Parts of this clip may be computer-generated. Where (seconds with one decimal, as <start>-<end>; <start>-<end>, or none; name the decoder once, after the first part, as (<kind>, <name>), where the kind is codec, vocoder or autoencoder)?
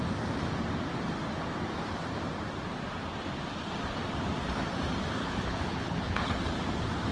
5.2-6.4 (codec, HILCodec)